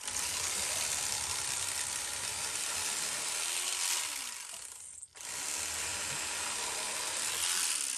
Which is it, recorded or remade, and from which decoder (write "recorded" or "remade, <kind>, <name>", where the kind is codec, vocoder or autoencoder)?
recorded